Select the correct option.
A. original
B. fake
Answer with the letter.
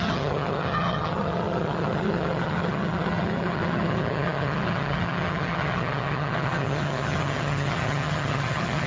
B